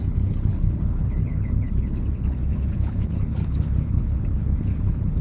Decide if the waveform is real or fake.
fake